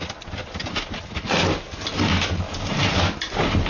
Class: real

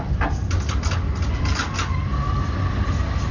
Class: real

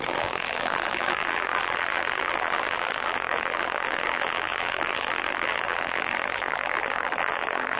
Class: fake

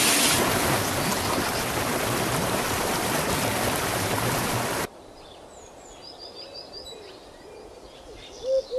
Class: real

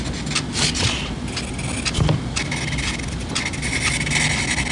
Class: real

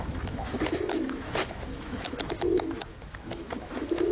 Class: fake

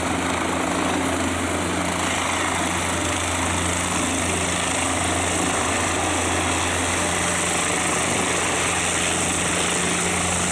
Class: real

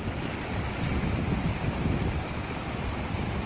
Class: fake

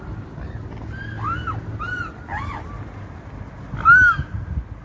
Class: real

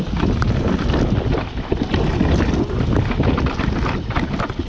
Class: real